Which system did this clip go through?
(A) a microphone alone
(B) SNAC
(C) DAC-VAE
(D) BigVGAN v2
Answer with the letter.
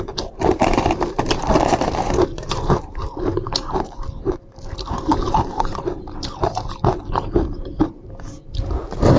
D